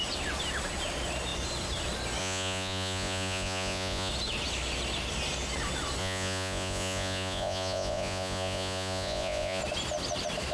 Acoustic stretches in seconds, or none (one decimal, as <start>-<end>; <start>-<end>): 0.0-2.2; 4.1-6.0; 9.6-10.5